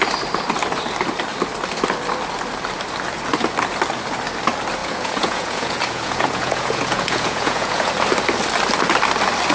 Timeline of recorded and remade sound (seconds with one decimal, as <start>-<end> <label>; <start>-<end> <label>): 0.0-4.8 recorded; 4.8-7.9 remade; 7.9-9.5 recorded